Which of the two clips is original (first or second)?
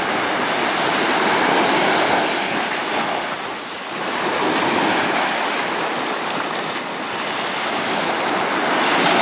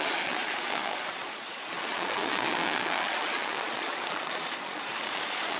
first